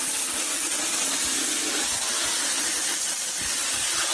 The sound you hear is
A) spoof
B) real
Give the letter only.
B